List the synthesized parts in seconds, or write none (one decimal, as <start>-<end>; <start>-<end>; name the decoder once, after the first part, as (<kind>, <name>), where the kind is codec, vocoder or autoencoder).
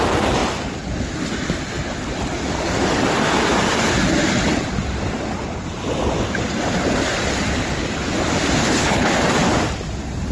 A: 8.6-9.1 (codec, HILCodec)